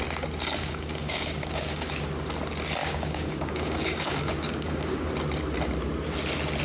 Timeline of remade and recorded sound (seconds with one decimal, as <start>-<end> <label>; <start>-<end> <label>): 0.0-0.6 recorded; 0.6-2.0 remade; 2.0-2.8 recorded; 2.8-5.1 remade; 5.1-6.6 recorded

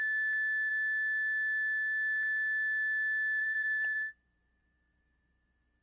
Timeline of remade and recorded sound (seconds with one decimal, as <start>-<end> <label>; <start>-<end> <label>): 0.0-3.4 recorded; 3.4-5.8 remade

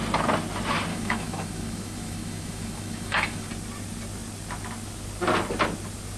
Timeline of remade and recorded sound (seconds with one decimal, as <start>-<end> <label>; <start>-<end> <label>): 0.0-0.9 recorded; 0.9-3.5 remade; 3.5-6.2 recorded

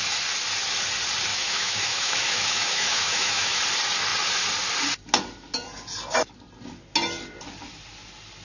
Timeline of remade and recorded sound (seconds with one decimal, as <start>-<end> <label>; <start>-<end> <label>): 0.0-1.3 recorded; 1.3-3.6 remade; 3.6-8.4 recorded

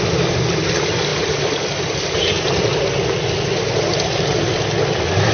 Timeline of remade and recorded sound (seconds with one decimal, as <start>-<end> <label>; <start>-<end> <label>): 0.0-5.3 recorded